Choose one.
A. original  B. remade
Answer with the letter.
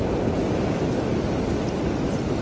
A